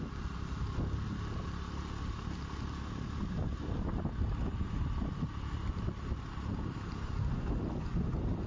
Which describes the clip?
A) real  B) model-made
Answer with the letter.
A